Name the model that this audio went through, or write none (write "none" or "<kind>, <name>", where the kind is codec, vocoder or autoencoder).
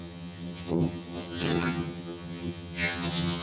vocoder, HiFi-GAN